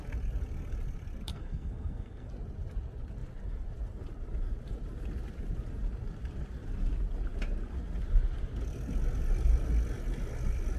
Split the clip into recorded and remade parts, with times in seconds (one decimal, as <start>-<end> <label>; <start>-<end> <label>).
0.0-1.3 recorded; 1.3-2.3 remade; 2.3-10.8 recorded